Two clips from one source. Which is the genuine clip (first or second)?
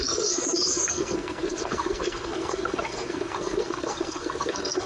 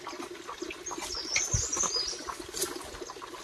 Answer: second